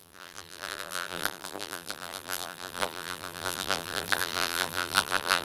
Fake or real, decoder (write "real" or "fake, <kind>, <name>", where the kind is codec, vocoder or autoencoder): fake, vocoder, BigVGAN v2